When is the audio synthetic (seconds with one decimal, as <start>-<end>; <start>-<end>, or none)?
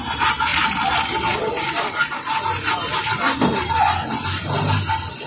none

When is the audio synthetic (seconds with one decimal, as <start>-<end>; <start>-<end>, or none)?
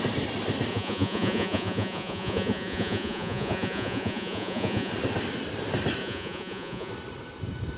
0.7-4.9; 6.0-6.9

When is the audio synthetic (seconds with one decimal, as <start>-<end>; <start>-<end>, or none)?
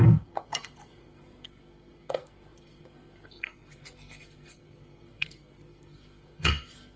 0.0-7.0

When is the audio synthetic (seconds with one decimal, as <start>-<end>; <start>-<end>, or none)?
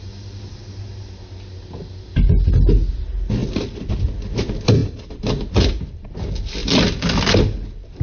none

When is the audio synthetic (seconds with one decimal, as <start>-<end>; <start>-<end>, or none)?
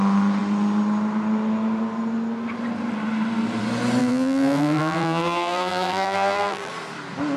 4.0-6.7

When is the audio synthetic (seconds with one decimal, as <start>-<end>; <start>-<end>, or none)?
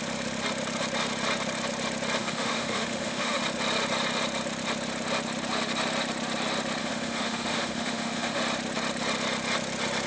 2.2-3.4; 6.8-8.4